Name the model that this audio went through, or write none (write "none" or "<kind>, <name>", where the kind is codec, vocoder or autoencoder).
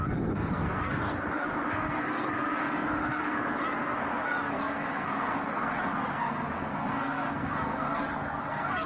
codec, SNAC